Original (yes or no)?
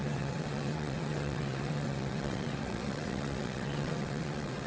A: no